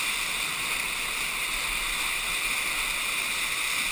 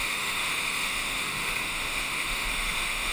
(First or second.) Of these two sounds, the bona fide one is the first